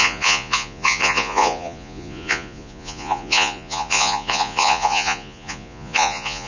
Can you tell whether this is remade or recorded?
remade